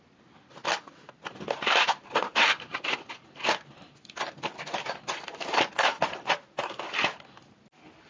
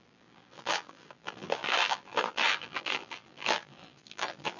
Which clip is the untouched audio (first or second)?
first